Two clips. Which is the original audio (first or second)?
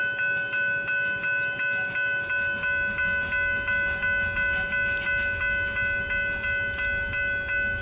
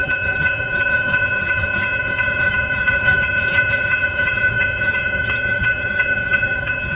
first